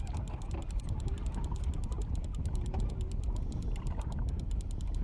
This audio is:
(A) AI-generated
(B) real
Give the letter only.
B